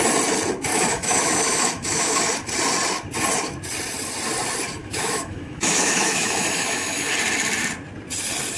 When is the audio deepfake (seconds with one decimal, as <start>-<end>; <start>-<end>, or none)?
0.7-2.2; 4.8-7.1